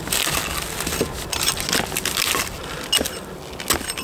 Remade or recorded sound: recorded